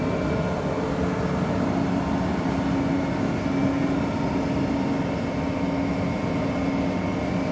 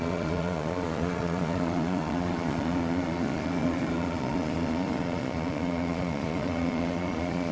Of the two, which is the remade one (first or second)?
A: second